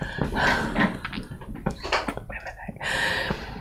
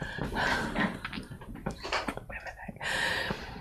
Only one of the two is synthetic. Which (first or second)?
second